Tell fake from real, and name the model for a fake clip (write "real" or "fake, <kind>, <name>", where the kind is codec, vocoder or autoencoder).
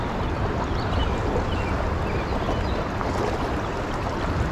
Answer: real